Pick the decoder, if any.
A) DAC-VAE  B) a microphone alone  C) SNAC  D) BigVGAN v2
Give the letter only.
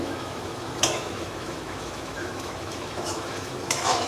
A